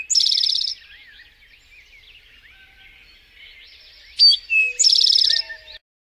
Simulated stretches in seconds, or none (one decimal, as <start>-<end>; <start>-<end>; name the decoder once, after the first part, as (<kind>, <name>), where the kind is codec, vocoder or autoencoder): none